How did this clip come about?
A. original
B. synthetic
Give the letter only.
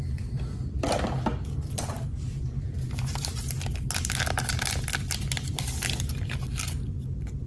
A